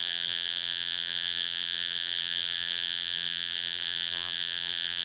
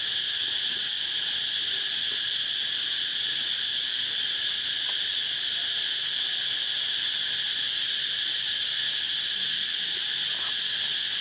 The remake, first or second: first